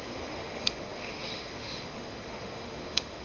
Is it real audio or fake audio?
fake